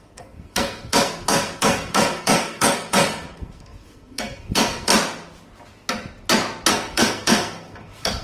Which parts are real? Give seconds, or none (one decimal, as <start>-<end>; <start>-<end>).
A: 4.9-6.7